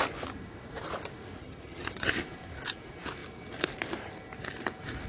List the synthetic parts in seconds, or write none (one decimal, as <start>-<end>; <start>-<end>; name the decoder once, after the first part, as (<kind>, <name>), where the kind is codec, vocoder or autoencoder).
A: 1.4-2.1 (vocoder, HiFi-GAN)